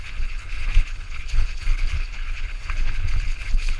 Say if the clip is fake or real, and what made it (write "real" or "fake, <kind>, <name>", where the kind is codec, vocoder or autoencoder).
fake, codec, HILCodec